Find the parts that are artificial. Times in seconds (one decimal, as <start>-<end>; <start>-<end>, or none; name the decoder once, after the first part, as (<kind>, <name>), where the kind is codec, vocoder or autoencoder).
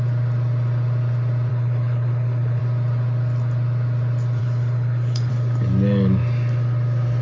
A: 1.5-2.6 (codec, HILCodec); 4.4-5.3